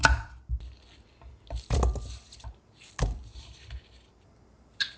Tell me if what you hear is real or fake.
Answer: real